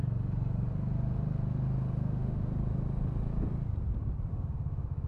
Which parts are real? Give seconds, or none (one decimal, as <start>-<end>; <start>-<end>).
0.0-2.0; 2.5-4.3